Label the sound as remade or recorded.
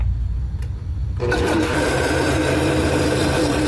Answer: remade